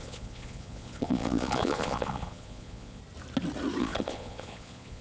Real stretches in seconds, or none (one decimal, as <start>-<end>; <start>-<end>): 3.0-3.8